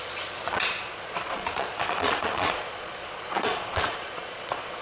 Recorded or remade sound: remade